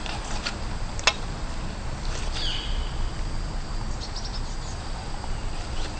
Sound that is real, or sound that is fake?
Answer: real